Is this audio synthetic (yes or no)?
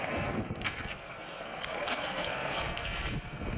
yes